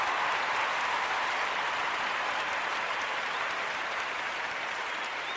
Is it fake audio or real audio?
fake